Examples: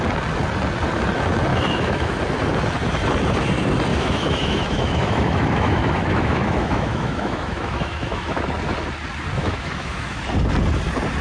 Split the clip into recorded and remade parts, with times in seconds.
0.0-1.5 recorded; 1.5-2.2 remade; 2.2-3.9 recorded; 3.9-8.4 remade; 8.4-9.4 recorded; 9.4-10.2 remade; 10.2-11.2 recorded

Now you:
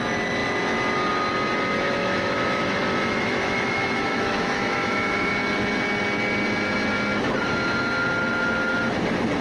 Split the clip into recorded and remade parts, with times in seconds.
0.0-2.0 recorded; 2.0-5.4 remade; 5.4-9.4 recorded

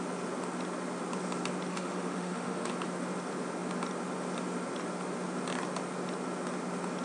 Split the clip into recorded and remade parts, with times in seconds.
0.0-1.7 recorded; 1.7-2.7 remade; 2.7-7.0 recorded

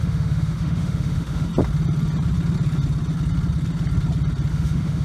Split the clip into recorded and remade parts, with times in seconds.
0.0-1.5 remade; 1.5-4.5 recorded; 4.5-5.0 remade

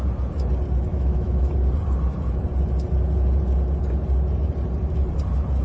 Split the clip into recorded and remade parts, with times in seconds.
0.0-0.9 recorded; 0.9-1.5 remade; 1.5-5.6 recorded

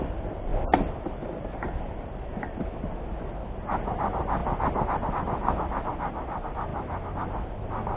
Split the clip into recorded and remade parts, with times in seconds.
0.0-8.0 recorded

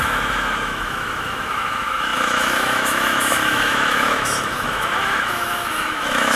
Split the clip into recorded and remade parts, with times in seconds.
0.0-6.4 remade

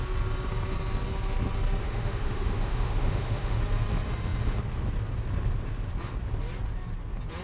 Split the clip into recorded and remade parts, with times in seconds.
0.0-1.8 recorded; 1.8-3.6 remade; 3.6-7.4 recorded